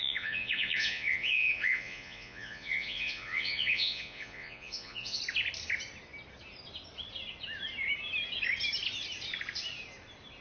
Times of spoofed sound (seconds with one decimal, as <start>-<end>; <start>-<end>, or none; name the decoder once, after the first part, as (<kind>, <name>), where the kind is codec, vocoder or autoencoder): 0.0-5.2 (vocoder, Vocos)